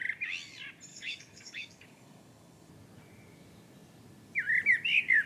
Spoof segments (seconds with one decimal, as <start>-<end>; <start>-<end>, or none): 0.9-2.7